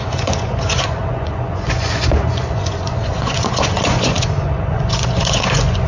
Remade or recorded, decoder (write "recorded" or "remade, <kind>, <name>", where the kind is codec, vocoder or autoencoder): remade, vocoder, Vocos